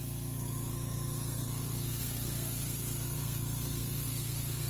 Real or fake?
fake